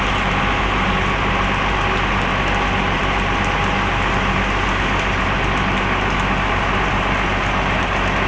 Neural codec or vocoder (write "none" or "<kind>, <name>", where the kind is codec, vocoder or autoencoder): none